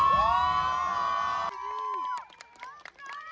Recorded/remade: recorded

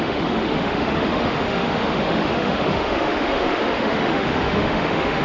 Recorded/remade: remade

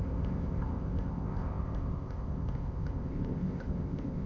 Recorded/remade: remade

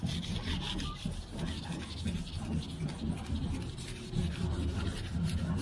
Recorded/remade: recorded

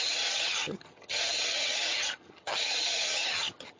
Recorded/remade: remade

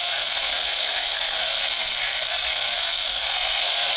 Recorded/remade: remade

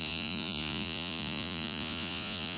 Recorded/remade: remade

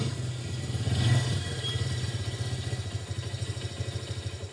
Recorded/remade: recorded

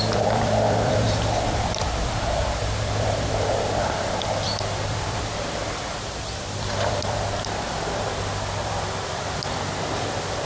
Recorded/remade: remade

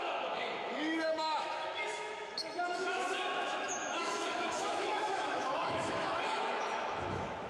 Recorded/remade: remade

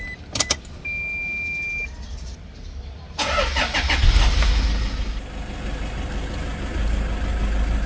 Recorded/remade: recorded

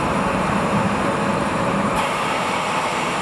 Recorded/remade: remade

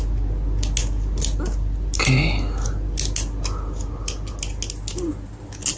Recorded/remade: recorded